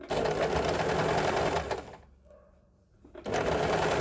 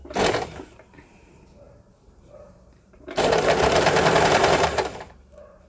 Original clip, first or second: first